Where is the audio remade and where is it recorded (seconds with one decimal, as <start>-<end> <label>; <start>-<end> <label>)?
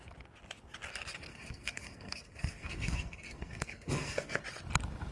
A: 0.0-1.3 recorded; 1.3-4.4 remade; 4.4-5.1 recorded